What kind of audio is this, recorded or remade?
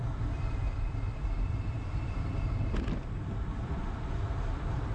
remade